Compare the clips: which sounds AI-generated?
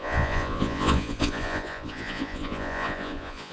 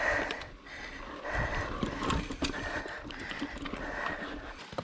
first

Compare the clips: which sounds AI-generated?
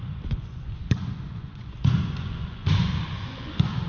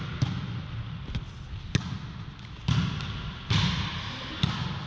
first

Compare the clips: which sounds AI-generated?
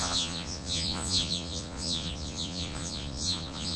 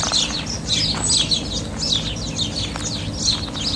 first